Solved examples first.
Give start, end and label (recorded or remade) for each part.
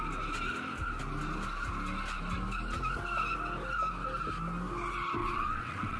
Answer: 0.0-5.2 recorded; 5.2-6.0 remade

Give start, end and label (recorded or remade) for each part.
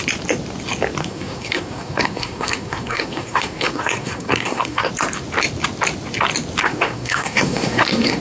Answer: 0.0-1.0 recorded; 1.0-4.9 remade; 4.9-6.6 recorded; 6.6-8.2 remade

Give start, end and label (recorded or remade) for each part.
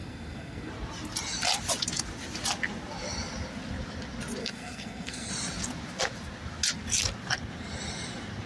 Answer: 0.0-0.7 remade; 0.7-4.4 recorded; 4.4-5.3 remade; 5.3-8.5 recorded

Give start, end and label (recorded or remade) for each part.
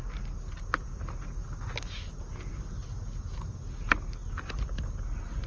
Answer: 0.0-5.5 recorded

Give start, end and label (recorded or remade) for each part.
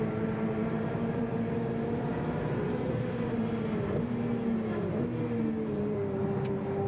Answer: 0.0-6.2 remade; 6.2-6.9 recorded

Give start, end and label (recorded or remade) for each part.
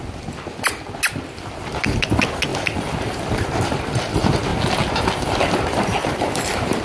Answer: 0.0-2.5 recorded; 2.5-3.7 remade; 3.7-6.0 recorded; 6.0-6.8 remade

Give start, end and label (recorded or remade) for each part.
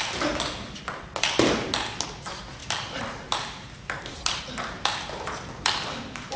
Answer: 0.0-2.6 recorded; 2.6-4.4 remade; 4.4-6.4 recorded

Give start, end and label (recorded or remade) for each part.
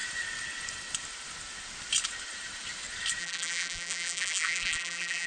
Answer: 0.0-3.2 recorded; 3.2-5.3 remade